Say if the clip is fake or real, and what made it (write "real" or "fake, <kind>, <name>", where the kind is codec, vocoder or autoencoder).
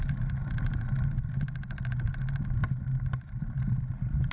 real